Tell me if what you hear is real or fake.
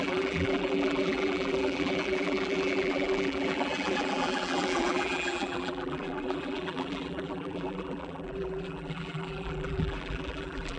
fake